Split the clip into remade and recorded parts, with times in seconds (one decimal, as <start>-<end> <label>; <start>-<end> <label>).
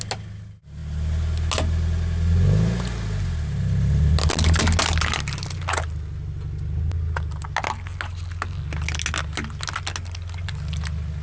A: 0.0-11.2 recorded